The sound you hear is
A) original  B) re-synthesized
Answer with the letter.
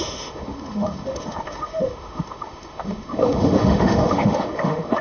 B